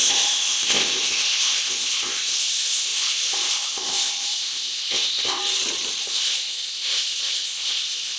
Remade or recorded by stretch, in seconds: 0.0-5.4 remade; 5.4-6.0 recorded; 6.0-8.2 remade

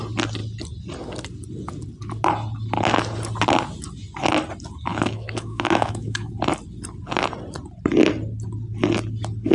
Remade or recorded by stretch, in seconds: 0.0-4.9 recorded; 4.9-6.3 remade; 6.3-9.5 recorded

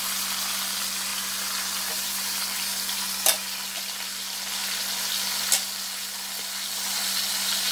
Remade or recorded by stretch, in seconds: 0.0-7.7 recorded

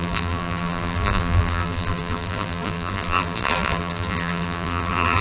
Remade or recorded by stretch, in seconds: 0.0-5.2 remade

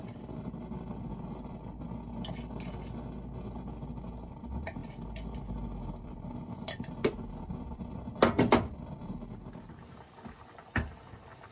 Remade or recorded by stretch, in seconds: 0.0-11.5 recorded